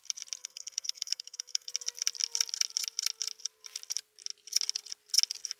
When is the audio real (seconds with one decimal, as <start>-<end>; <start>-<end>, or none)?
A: 0.0-0.4; 1.7-5.6